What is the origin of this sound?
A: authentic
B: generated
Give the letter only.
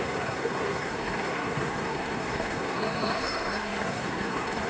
B